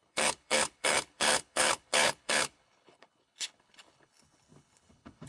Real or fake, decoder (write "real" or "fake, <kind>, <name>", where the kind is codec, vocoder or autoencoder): fake, codec, HILCodec